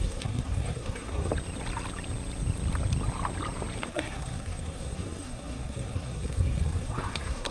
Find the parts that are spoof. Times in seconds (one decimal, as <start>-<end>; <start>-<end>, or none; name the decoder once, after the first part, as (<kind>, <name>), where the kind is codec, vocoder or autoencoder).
0.0-1.3 (codec, SNAC); 3.8-7.5